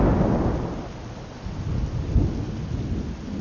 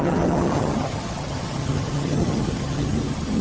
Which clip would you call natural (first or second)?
first